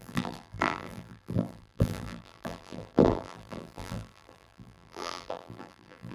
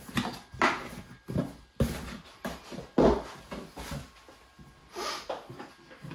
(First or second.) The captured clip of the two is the second